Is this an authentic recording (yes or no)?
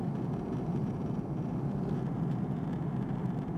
yes